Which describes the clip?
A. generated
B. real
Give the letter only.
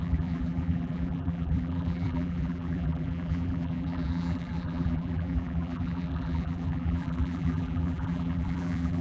A